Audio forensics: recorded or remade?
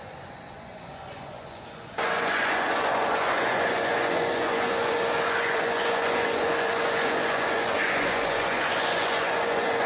remade